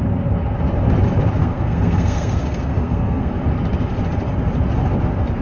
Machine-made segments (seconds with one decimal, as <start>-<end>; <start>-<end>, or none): 1.4-3.4